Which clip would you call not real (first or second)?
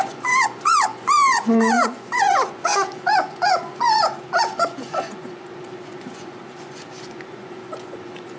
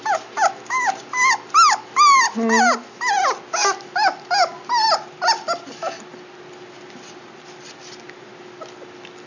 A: first